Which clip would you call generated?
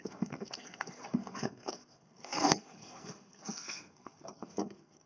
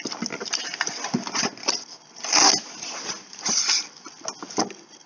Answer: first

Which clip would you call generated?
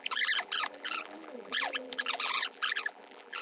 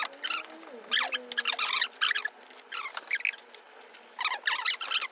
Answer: first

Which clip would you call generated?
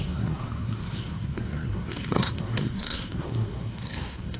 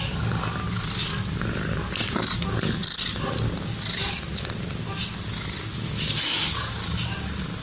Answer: first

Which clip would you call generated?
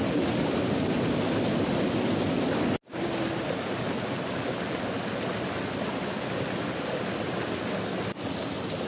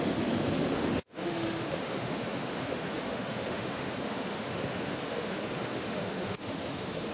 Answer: second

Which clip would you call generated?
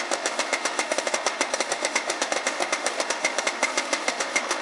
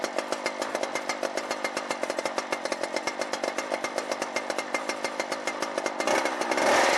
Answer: first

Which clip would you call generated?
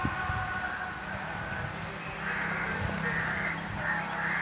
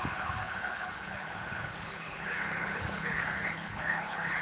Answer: second